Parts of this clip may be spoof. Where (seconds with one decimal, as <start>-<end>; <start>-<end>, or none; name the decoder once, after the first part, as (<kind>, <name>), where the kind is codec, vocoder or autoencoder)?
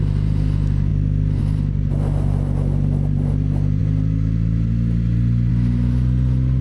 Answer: none